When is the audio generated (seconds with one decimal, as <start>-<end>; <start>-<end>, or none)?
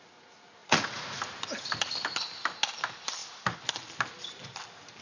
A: 0.6-1.2